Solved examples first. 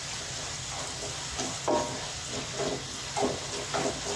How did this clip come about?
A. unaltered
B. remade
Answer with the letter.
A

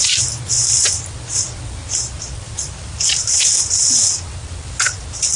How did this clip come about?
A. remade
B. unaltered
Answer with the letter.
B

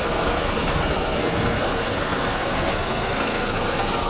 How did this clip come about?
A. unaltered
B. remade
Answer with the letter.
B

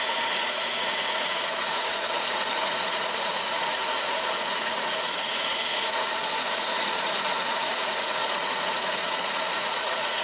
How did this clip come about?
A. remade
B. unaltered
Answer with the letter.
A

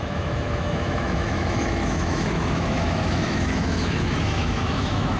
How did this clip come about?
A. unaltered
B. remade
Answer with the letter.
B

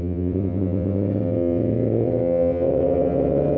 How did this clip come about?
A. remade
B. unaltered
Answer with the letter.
A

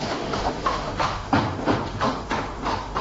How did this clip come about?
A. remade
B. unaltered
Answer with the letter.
A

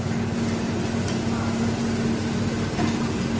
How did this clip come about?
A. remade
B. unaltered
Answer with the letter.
B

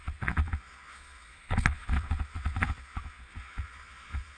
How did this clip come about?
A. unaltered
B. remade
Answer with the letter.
B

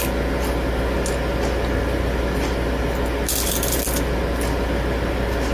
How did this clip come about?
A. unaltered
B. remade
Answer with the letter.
A